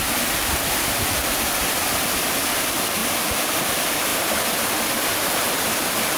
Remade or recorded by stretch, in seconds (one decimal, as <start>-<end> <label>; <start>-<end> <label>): 0.0-6.2 remade

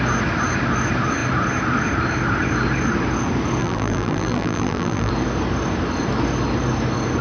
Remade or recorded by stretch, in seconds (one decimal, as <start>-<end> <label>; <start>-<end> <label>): 0.0-3.6 recorded; 3.6-5.1 remade; 5.1-7.2 recorded

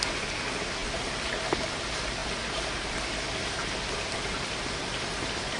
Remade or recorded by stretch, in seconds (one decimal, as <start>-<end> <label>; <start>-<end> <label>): 0.0-0.8 recorded; 0.8-1.3 remade; 1.3-5.6 recorded